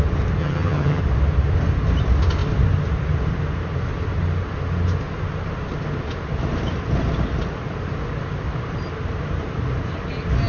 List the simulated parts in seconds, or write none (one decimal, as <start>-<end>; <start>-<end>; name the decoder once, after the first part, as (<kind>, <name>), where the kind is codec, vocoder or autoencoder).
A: 0.4-1.0 (vocoder, HiFi-GAN)

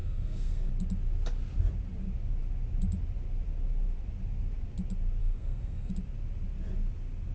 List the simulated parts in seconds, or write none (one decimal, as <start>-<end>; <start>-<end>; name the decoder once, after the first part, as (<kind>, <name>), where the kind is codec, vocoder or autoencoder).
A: 0.0-0.7 (codec, SNAC); 5.2-5.9

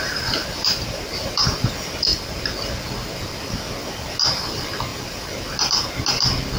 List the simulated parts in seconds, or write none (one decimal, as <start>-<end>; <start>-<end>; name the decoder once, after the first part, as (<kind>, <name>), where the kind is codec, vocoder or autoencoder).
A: 0.4-1.7 (vocoder, BigVGAN v2)

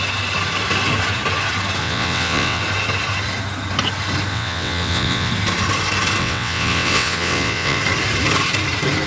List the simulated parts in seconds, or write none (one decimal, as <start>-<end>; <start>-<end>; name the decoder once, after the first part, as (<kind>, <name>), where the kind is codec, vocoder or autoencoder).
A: 1.8-2.6 (vocoder, WaveNeXt); 4.3-5.3; 6.2-7.8

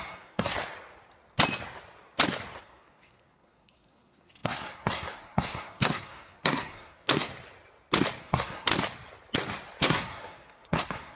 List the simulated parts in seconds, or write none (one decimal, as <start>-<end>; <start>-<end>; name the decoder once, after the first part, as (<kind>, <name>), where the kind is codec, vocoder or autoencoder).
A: 0.0-0.5 (codec, SNAC); 2.6-7.3; 8.2-8.7; 9.8-11.2

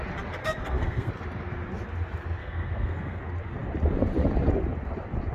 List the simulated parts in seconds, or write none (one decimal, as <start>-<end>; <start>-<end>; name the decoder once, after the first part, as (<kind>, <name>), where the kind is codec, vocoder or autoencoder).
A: 0.4-1.1 (codec, SNAC); 2.4-3.2

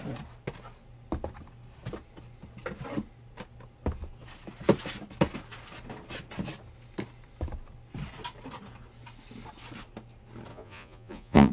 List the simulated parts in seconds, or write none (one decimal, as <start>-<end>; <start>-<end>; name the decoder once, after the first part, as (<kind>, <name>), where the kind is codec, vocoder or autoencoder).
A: 10.5-11.5 (vocoder, Vocos)